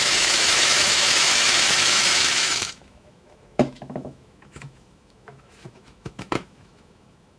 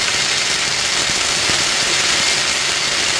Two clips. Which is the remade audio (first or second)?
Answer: first